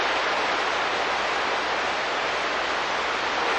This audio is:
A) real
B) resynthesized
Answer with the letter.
A